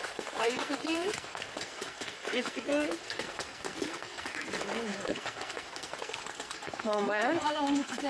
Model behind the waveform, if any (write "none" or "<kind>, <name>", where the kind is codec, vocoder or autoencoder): codec, SNAC